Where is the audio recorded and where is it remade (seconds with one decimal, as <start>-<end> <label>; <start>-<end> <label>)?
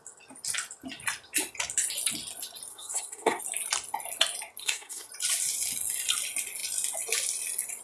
0.0-2.7 recorded; 2.7-3.4 remade; 3.4-4.6 recorded; 4.6-5.1 remade; 5.1-7.8 recorded